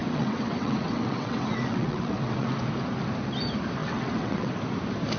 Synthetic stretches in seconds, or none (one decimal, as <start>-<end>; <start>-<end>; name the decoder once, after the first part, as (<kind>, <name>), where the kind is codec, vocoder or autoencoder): 0.0-2.6 (vocoder, WaveNeXt); 3.8-4.5